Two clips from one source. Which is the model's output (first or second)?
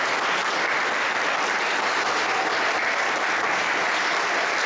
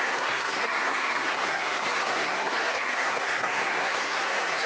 second